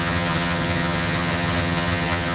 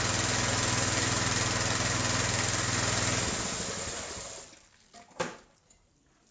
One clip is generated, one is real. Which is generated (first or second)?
first